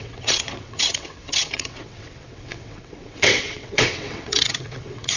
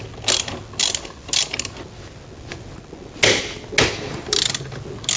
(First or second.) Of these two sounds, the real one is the second